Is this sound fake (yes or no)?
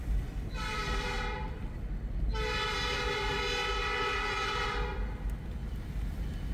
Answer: no